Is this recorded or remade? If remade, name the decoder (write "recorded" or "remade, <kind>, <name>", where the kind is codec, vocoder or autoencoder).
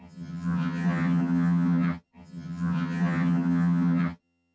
remade, vocoder, HiFi-GAN